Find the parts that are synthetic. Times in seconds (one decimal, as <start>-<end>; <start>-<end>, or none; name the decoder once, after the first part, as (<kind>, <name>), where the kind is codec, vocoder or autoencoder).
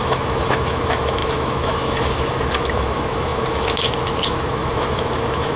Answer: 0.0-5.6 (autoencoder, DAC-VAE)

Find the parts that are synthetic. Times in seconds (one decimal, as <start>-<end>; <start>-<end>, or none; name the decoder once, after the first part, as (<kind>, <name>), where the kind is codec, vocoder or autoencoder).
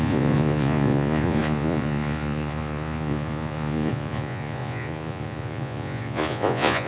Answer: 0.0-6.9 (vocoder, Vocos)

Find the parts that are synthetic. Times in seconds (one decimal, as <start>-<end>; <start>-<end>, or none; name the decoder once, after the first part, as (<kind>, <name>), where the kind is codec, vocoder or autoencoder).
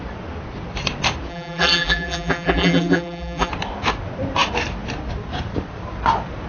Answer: 1.3-3.5 (vocoder, BigVGAN v2)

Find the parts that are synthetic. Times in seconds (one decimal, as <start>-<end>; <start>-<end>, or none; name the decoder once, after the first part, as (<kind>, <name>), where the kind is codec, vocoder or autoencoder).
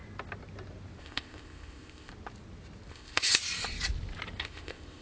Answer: 1.0-2.1 (codec, ZipCodec); 2.9-3.3; 4.4-5.0